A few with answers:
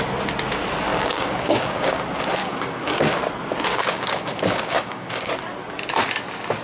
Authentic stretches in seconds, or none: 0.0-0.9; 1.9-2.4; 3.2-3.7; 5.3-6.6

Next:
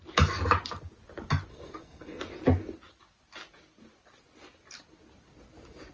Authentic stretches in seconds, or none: 0.0-1.5; 2.2-5.9

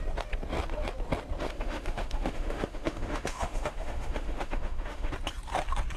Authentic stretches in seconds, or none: 0.0-1.5; 5.1-6.0

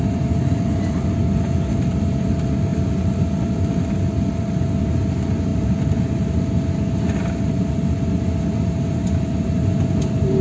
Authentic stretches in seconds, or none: 0.0-10.4

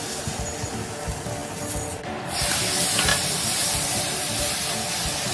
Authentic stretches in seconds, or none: 0.0-3.1; 4.4-5.3

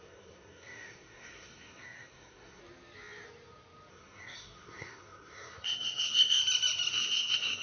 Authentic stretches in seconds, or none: 2.6-3.9; 6.4-6.9

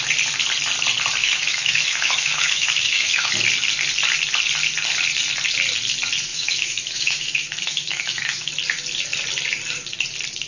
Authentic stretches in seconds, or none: 0.0-1.2; 3.3-6.3; 8.5-10.5

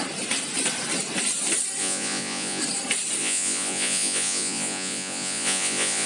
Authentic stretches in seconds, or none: 0.0-1.8; 2.6-3.2